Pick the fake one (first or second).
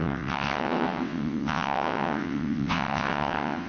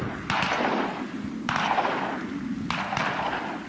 first